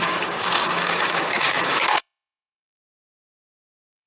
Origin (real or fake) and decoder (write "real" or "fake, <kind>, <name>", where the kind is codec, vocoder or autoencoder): fake, codec, DAC